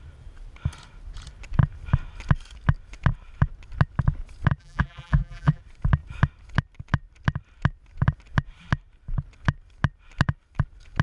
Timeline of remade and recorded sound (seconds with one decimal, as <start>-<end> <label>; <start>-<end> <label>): 0.0-4.6 recorded; 4.6-5.6 remade; 5.6-11.0 recorded

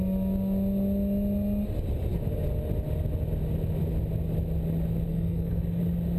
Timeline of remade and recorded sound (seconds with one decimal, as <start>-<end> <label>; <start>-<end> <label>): 0.0-5.1 recorded; 5.1-5.8 remade; 5.8-6.2 recorded